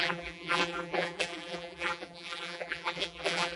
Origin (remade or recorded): remade